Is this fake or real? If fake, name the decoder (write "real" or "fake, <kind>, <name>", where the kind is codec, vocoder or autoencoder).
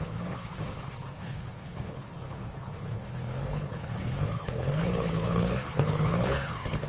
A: fake, codec, HILCodec